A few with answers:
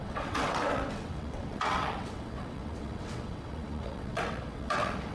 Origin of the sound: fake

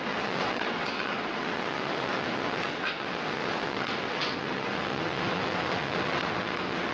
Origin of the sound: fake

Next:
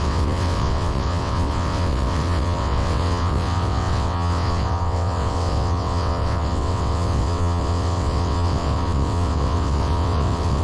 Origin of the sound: fake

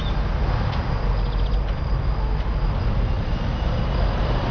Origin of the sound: real